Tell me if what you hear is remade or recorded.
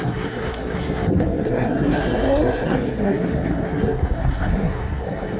remade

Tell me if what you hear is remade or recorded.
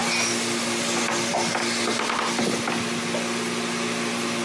recorded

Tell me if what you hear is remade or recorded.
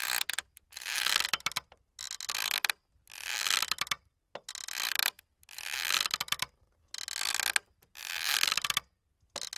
recorded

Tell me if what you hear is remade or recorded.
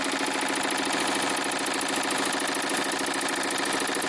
recorded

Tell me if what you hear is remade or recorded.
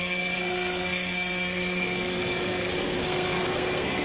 remade